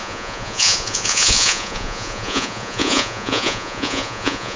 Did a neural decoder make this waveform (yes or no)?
yes